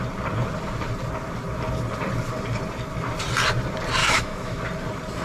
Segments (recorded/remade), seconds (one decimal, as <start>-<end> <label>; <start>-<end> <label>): 0.0-4.0 recorded; 4.0-4.6 remade; 4.6-5.2 recorded